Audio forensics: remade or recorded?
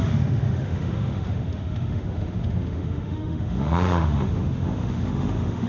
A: remade